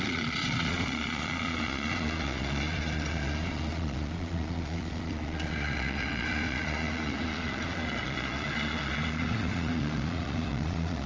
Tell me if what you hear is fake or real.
fake